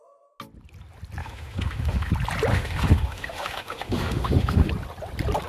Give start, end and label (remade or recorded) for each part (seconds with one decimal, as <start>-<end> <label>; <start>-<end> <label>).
0.0-1.2 recorded; 1.2-2.1 remade; 2.1-2.5 recorded; 2.5-4.7 remade; 4.7-5.5 recorded